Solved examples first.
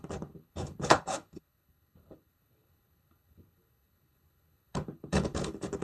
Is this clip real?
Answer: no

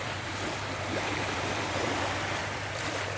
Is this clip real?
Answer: no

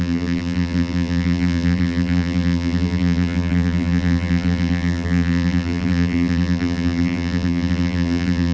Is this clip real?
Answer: no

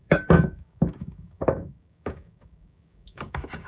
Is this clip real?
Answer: no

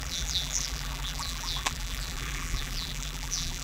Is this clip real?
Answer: no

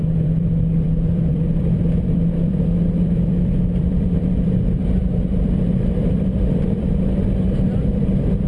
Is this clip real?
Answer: no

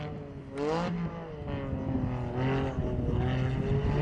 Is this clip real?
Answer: yes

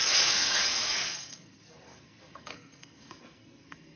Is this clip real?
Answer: no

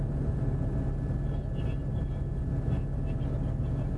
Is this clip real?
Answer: yes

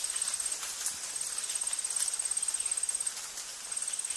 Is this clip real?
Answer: yes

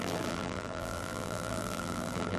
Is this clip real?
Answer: no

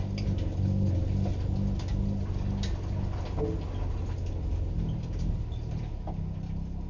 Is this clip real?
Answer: yes